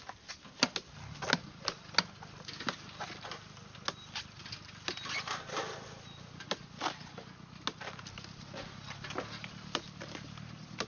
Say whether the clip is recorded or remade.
recorded